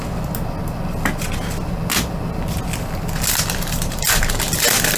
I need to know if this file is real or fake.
real